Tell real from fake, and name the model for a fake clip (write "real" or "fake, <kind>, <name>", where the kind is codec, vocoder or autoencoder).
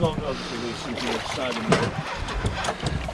real